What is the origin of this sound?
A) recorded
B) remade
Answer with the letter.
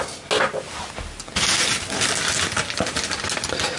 A